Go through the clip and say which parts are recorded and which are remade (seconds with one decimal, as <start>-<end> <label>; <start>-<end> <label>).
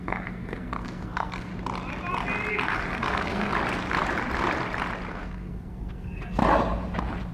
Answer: 0.0-1.5 remade; 1.5-2.5 recorded; 2.5-3.5 remade; 3.5-5.1 recorded; 5.1-6.4 remade; 6.4-7.3 recorded